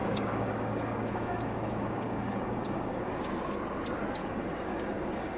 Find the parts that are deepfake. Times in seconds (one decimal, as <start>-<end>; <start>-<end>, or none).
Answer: 0.0-3.1; 4.2-5.4